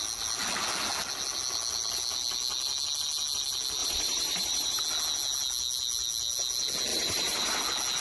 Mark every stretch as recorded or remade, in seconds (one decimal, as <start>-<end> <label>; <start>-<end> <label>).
0.0-3.8 recorded; 3.8-4.8 remade; 4.8-6.9 recorded; 6.9-7.6 remade; 7.6-8.0 recorded